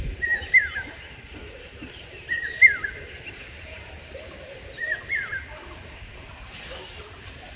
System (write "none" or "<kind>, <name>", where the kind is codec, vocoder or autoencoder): vocoder, BigVGAN v2